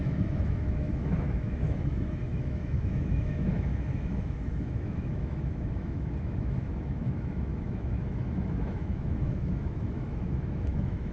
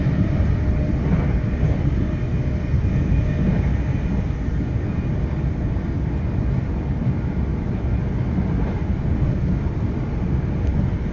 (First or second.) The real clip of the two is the second